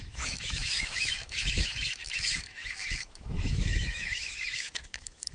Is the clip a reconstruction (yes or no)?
yes